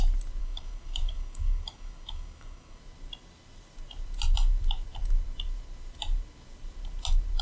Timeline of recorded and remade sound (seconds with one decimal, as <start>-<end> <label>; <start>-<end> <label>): 0.0-0.4 recorded; 0.4-2.8 remade; 2.8-7.4 recorded